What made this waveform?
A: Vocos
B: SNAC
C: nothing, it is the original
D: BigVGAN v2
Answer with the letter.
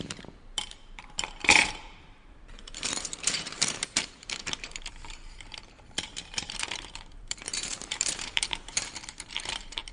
D